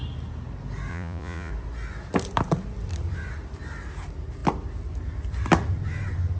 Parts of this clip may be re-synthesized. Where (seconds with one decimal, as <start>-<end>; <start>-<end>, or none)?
0.9-1.5